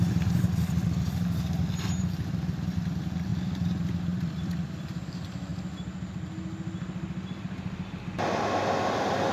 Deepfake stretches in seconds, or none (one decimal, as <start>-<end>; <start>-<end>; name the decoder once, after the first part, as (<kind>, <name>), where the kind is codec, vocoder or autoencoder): 3.3-4.5 (vocoder, BigVGAN v2)